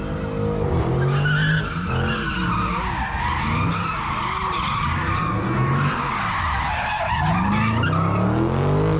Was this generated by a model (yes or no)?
no